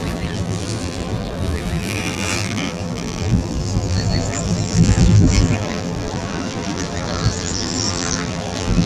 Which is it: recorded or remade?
remade